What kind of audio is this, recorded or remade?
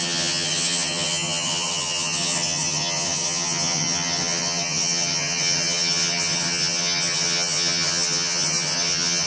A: remade